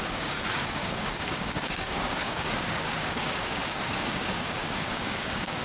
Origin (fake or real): fake